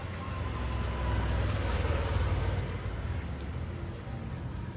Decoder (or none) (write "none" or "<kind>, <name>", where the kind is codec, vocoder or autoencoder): none